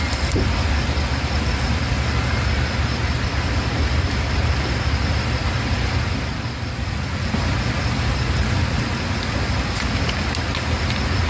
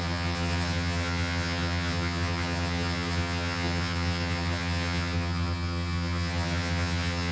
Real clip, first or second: first